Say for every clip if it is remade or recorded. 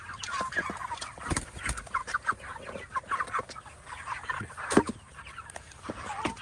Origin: recorded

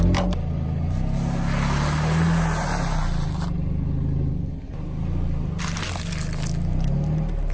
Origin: recorded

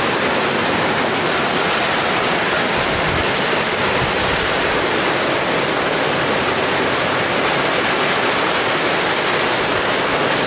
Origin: recorded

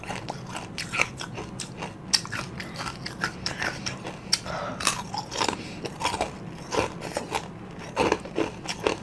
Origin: recorded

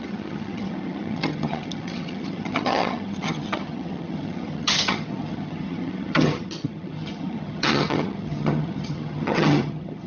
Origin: remade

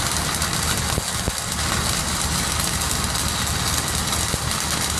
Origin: recorded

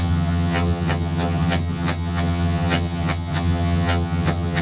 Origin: remade